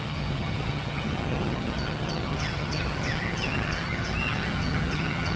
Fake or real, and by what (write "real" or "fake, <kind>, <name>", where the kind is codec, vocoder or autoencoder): fake, vocoder, HiFi-GAN